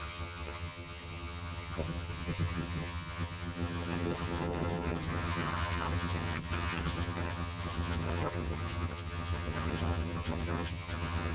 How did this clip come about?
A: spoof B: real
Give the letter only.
A